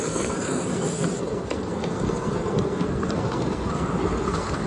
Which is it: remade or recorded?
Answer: remade